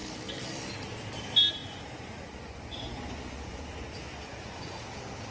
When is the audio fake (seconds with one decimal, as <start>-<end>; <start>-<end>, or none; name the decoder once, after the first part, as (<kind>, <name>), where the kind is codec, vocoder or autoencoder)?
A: 1.6-4.8 (vocoder, Vocos)